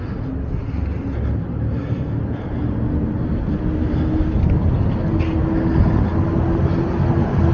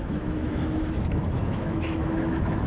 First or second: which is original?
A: first